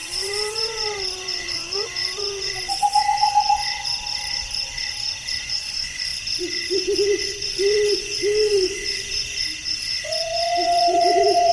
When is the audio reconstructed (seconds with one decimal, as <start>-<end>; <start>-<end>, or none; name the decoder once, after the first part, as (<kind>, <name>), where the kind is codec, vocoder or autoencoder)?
0.0-3.9 (vocoder, Vocos); 5.4-11.5